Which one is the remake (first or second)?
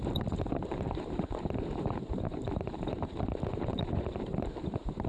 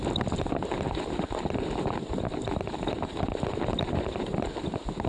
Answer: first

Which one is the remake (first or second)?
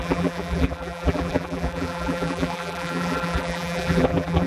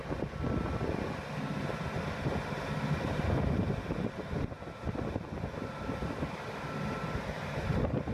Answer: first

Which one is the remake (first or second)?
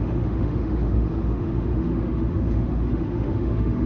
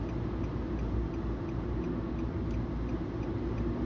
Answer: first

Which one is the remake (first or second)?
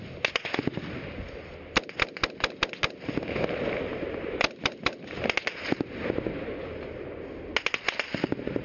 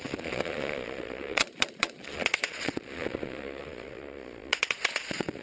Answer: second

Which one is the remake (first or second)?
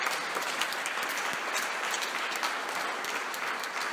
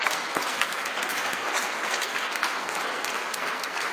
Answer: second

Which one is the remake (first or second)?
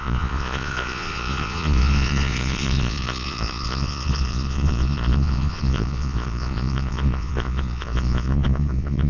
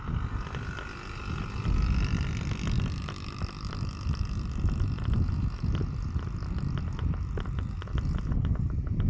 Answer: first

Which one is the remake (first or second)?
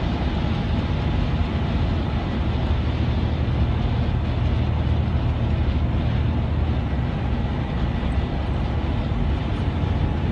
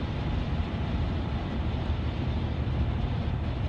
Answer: second